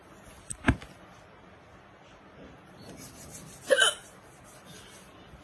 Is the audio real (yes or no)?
yes